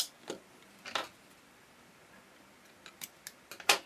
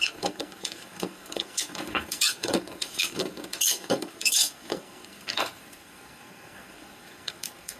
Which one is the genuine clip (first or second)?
first